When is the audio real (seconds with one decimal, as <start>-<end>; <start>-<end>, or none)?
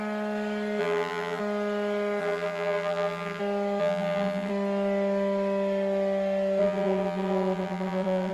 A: 0.0-0.8; 1.4-2.2; 3.4-3.8; 4.5-6.6